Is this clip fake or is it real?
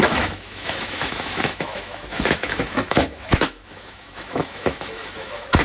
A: fake